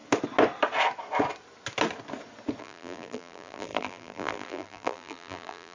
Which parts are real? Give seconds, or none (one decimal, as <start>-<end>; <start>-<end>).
0.0-2.6